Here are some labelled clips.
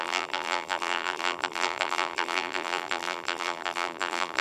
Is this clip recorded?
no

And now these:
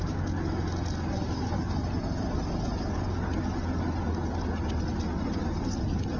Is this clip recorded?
yes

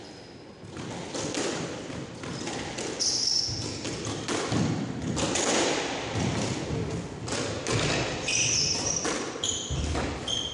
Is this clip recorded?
yes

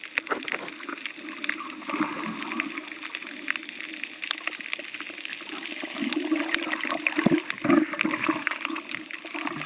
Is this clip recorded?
yes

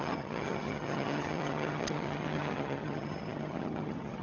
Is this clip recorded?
no